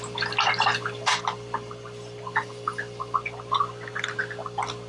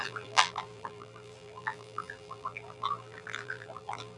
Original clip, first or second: first